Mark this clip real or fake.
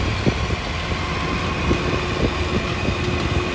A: real